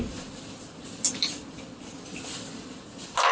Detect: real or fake real